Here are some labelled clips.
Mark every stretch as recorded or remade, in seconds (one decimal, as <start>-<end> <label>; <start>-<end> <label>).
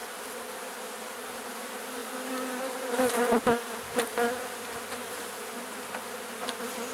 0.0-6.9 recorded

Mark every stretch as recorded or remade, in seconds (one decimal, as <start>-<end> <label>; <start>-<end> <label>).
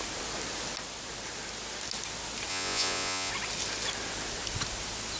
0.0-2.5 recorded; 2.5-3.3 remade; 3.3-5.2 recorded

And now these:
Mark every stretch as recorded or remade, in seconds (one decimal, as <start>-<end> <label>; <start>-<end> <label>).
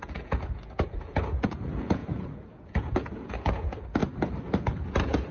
0.0-4.0 remade; 4.0-4.6 recorded; 4.6-5.3 remade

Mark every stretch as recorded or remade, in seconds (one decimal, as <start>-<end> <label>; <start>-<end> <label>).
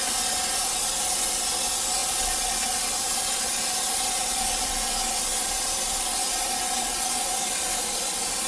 0.0-8.5 recorded